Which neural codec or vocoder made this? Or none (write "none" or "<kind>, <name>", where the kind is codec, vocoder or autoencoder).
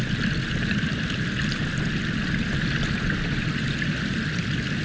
none